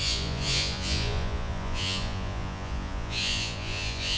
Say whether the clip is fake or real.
fake